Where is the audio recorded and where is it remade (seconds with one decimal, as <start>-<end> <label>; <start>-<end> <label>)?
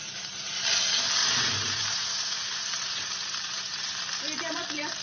0.0-0.5 remade; 0.5-1.2 recorded; 1.2-4.2 remade; 4.2-5.0 recorded